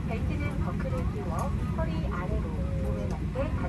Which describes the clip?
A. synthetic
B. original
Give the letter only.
B